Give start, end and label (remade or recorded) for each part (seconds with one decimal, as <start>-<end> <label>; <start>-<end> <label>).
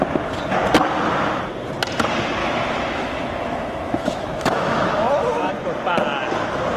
0.0-2.4 recorded; 2.4-5.5 remade; 5.5-6.8 recorded